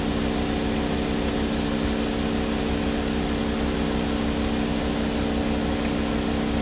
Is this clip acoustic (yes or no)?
yes